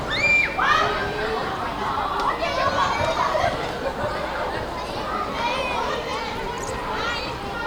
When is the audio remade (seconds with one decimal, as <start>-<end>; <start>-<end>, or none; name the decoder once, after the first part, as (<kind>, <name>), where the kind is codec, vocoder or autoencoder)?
1.4-2.3 (vocoder, BigVGAN v2)